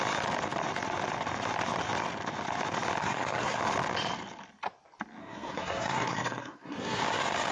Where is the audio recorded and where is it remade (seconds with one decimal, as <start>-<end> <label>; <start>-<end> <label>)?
0.0-3.0 recorded; 3.0-3.6 remade; 3.6-5.2 recorded; 5.2-7.0 remade; 7.0-7.5 recorded